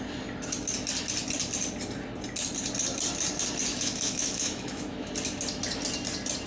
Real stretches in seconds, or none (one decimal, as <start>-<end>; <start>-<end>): 0.0-3.7; 5.1-6.5